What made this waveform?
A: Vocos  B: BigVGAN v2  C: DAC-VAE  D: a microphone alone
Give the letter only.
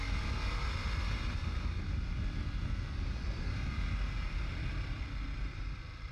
D